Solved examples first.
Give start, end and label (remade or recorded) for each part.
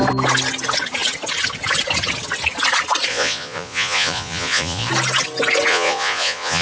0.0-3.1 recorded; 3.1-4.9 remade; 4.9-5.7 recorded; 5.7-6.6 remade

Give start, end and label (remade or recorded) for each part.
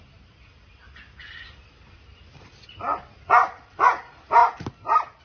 0.0-5.2 recorded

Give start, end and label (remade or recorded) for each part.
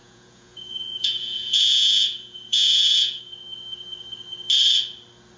0.0-3.2 remade; 3.2-5.4 recorded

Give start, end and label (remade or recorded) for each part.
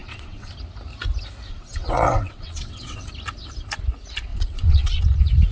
0.0-0.5 remade; 0.5-1.5 recorded; 1.5-3.1 remade; 3.1-4.3 recorded; 4.3-5.0 remade; 5.0-5.5 recorded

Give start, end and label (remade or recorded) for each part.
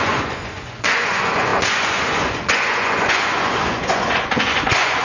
0.0-5.0 remade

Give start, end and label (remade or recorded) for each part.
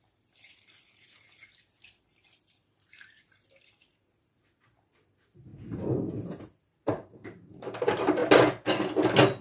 0.0-5.5 remade; 5.5-6.4 recorded; 6.4-8.2 remade; 8.2-9.4 recorded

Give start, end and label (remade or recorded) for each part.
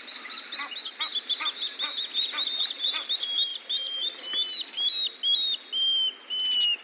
0.0-6.8 recorded